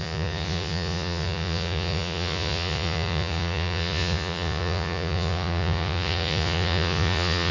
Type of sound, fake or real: fake